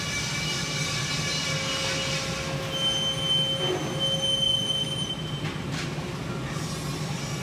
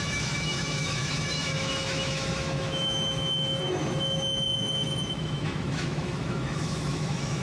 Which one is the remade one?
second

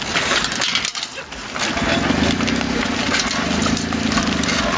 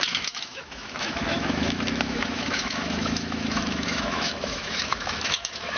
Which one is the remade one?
second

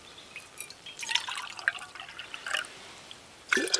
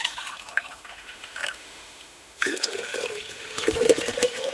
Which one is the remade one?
second